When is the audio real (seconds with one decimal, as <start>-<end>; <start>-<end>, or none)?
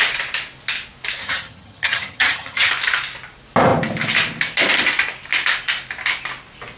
0.0-1.2; 2.7-6.8